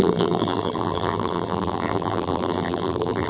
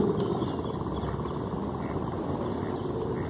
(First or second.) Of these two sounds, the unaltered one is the second